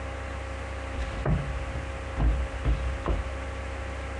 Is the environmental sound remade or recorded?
recorded